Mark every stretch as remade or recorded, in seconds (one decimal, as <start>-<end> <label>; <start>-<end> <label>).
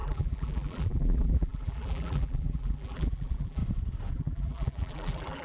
0.0-3.6 remade; 3.6-4.1 recorded; 4.1-5.4 remade